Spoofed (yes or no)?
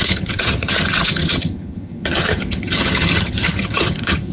yes